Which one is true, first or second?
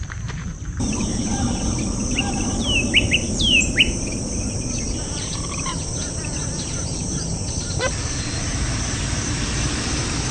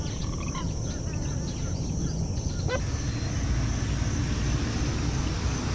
second